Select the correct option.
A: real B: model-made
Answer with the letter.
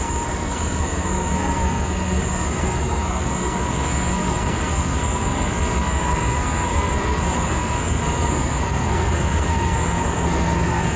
B